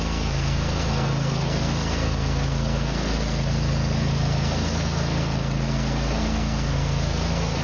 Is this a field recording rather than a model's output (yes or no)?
no